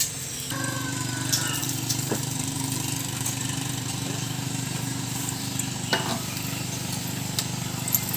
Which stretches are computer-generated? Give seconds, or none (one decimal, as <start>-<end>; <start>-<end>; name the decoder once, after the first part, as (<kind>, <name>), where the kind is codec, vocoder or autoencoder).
1.6-5.4 (vocoder, BigVGAN v2)